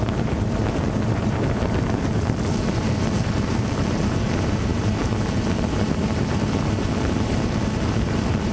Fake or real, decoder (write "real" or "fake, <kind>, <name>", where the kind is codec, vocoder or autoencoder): fake, vocoder, BigVGAN v2